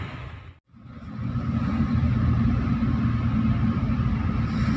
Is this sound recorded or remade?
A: recorded